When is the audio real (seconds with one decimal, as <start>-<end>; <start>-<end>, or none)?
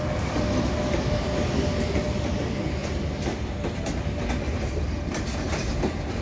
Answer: 0.0-6.2